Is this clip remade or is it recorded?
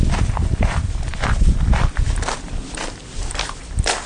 recorded